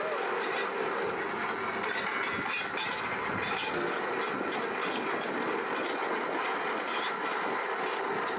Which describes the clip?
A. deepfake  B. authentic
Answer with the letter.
B